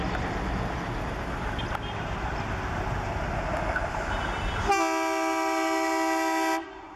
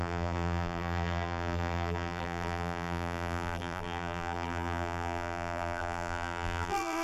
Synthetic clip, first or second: second